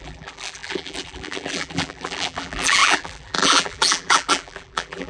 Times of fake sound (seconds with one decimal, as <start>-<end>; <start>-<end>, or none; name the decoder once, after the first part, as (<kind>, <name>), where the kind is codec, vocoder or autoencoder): 0.0-5.1 (vocoder, BigVGAN v2)